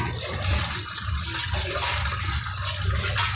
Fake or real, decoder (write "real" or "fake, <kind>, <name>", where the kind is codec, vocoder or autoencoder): real